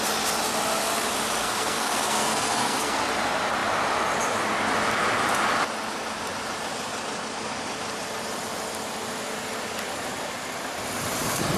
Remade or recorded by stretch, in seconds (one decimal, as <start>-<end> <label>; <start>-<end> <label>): 0.0-1.4 recorded; 1.4-3.0 remade; 3.0-11.6 recorded